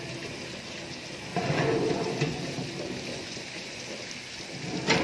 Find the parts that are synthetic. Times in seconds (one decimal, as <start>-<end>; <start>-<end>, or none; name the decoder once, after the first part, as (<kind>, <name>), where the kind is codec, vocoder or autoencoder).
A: 1.3-2.5 (vocoder, Vocos); 3.1-3.8